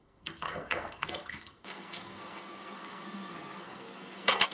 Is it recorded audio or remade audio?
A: remade